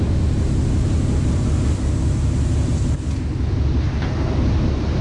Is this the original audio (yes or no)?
yes